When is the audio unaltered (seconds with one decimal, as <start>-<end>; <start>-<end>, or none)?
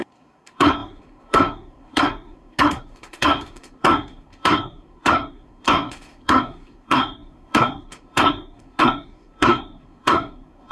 none